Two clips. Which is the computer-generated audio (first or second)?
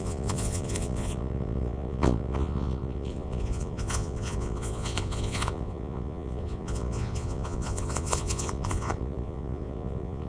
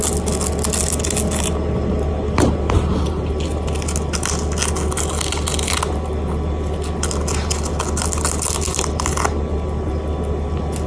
first